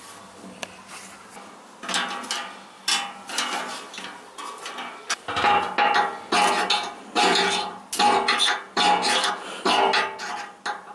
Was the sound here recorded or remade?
recorded